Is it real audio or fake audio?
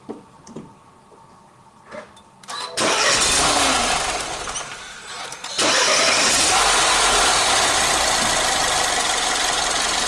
fake